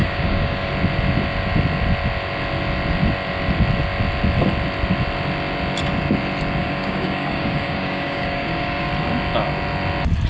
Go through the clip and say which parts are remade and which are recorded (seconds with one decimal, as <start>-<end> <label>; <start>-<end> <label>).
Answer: 0.0-0.7 remade; 0.7-6.6 recorded; 6.6-8.9 remade; 8.9-10.3 recorded